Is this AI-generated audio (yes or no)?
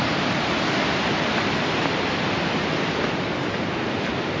no